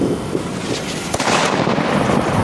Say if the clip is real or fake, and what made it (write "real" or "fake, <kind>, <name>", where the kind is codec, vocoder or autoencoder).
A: real